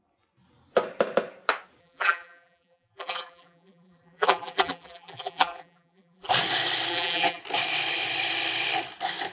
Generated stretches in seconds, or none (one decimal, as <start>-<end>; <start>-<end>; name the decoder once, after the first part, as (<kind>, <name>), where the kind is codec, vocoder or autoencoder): 1.8-6.3 (vocoder, BigVGAN v2); 6.9-7.4